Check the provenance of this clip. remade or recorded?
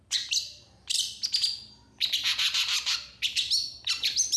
recorded